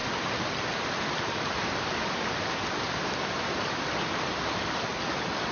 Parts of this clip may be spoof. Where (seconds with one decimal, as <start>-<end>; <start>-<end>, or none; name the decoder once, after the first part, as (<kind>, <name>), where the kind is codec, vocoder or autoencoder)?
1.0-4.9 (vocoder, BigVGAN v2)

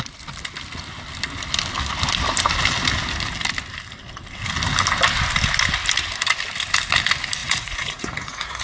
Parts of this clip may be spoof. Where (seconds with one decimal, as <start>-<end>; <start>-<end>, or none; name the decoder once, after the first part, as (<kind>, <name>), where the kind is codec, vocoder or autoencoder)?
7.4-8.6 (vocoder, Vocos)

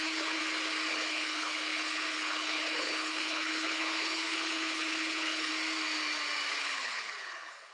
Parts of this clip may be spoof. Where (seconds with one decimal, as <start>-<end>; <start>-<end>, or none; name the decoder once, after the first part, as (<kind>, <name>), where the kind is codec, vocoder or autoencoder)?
0.0-0.4 (codec, HILCodec); 0.9-5.5; 6.5-7.7